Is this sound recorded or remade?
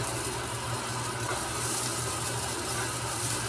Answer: recorded